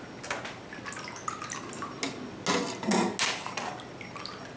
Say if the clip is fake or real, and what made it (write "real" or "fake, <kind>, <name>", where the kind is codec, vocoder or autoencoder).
real